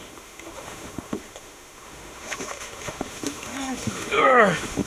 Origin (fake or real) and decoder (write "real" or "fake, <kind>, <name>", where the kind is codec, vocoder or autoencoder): fake, autoencoder, DAC-VAE